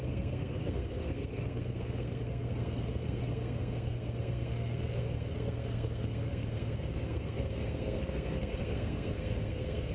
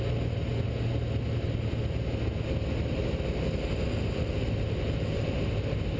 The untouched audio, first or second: second